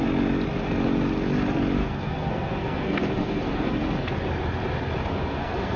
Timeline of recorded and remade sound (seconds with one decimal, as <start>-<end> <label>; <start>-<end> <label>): 0.0-1.8 recorded; 1.8-4.1 remade; 4.1-5.1 recorded; 5.1-5.8 remade